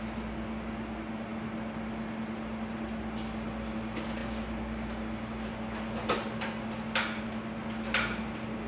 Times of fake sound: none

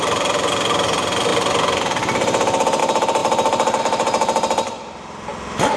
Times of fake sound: 0.0-1.3 (vocoder, BigVGAN v2); 2.8-5.8

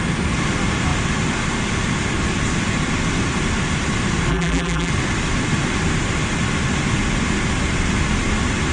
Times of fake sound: 4.3-4.9 (vocoder, BigVGAN v2)

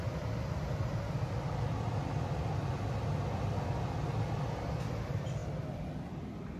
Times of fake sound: none

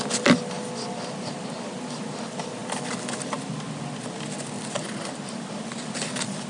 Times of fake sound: none

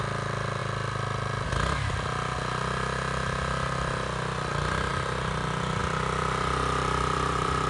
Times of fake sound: 5.8-7.7 (vocoder, BigVGAN v2)